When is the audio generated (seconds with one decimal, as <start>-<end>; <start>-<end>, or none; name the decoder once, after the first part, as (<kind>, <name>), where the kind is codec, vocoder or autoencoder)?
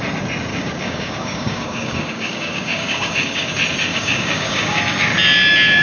0.5-3.5 (codec, DAC); 3.9-4.8